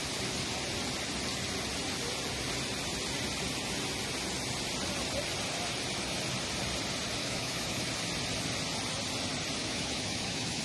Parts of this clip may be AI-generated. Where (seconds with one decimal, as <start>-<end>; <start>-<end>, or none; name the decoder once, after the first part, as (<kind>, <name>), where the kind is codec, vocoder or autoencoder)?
7.2-7.9 (autoencoder, DAC-VAE); 9.6-10.6